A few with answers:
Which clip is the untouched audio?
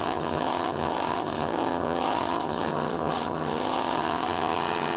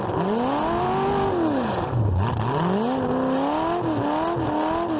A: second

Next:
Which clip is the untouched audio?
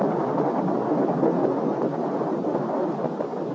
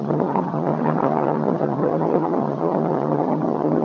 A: first